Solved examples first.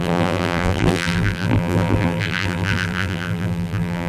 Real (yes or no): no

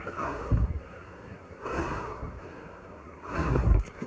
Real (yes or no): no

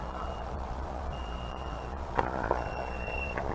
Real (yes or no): no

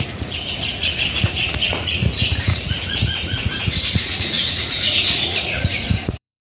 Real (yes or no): no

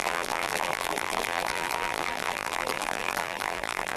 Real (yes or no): no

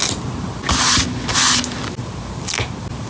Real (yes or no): yes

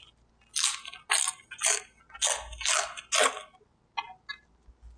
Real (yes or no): yes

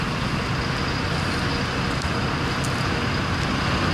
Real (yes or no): yes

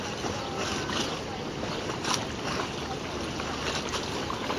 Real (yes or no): yes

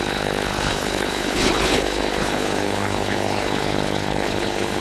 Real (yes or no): no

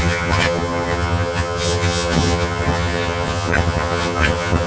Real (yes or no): no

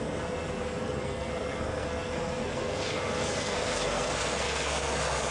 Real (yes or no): no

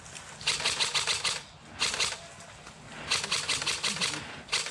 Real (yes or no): yes